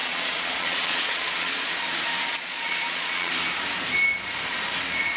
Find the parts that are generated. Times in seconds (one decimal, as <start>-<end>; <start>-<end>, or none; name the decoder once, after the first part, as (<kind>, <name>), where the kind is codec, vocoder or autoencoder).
0.0-1.7 (vocoder, Vocos); 2.3-3.3